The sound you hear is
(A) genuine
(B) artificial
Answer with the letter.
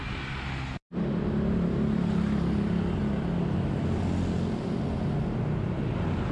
A